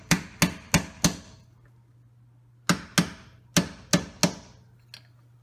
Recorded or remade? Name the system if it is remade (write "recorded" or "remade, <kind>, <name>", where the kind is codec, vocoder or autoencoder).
recorded